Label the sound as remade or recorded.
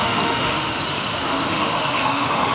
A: remade